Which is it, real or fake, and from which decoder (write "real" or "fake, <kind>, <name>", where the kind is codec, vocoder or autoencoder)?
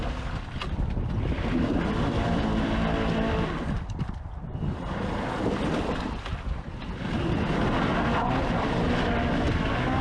real